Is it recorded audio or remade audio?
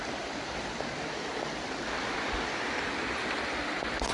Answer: recorded